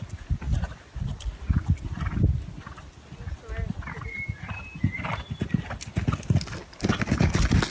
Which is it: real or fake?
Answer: real